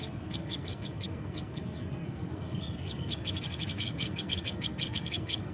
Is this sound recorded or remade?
remade